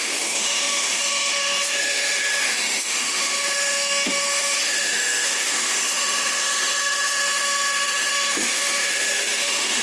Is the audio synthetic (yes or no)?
yes